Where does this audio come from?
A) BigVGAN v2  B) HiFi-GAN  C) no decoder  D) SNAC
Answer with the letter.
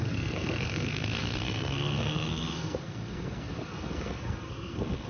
D